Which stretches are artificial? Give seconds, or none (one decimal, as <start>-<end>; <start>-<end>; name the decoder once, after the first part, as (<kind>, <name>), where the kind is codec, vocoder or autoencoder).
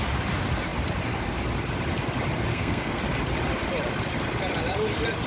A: 2.5-3.0 (codec, SNAC)